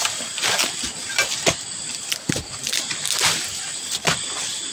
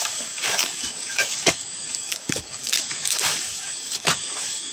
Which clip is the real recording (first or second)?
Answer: first